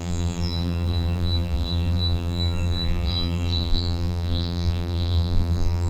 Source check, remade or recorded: remade